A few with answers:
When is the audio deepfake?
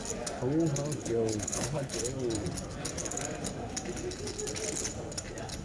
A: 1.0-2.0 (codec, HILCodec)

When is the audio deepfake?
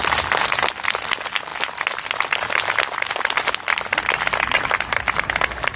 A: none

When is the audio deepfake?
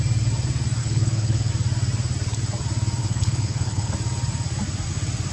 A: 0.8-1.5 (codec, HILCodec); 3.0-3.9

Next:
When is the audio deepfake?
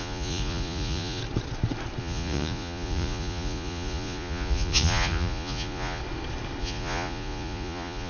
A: 0.0-1.2 (vocoder, Vocos); 2.0-6.0; 6.6-8.1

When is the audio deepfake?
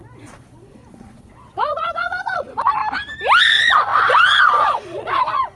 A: 0.0-2.8 (vocoder, Vocos); 3.4-5.6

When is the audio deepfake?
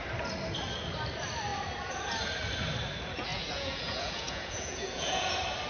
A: 3.3-5.3 (vocoder, Vocos)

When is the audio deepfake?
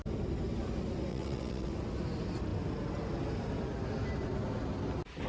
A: 1.1-1.7 (vocoder, WaveNeXt)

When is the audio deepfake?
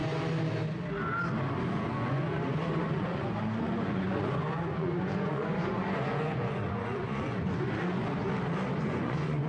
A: 1.7-8.0 (vocoder, Vocos); 8.8-9.5